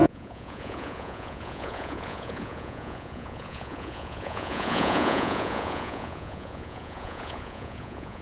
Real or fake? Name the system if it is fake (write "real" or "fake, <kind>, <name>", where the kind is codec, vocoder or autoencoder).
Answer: fake, vocoder, Vocos